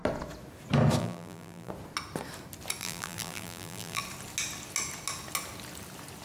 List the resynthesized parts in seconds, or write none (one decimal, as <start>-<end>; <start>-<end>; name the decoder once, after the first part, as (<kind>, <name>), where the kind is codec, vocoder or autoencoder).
1.0-1.7 (vocoder, BigVGAN v2); 2.8-4.0

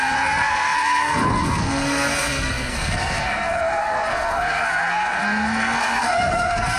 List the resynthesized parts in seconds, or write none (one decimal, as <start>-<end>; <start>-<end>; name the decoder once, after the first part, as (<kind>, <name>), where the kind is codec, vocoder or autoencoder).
0.0-6.8 (codec, SNAC)